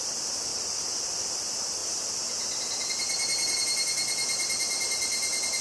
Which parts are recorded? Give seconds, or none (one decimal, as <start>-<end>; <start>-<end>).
0.5-1.3